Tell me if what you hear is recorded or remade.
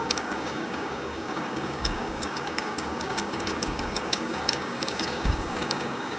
remade